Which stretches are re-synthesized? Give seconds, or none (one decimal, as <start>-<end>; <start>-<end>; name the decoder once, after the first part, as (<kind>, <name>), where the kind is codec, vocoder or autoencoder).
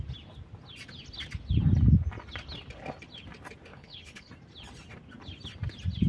3.7-4.3 (codec, HILCodec)